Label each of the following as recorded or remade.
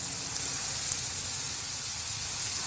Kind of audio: recorded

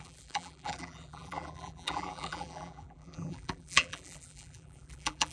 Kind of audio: remade